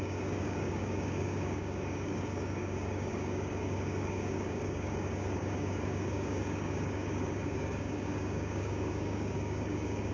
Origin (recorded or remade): remade